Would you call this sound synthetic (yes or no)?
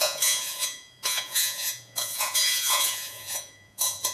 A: yes